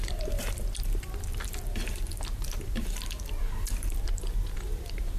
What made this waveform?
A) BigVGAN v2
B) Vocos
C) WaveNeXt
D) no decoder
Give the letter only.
A